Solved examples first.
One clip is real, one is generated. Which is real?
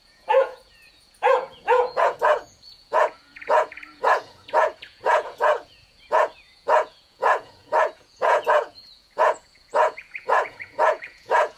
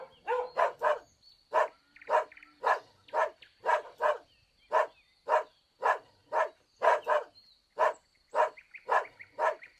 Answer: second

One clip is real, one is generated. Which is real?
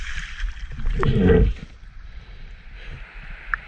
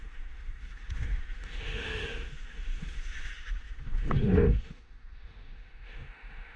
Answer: first